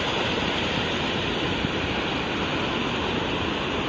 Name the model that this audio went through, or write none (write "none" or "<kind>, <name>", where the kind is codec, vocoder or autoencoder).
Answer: none